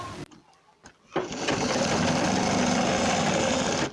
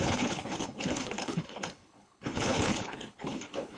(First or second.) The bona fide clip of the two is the first